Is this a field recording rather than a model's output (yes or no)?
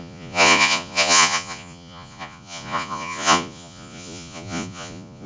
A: no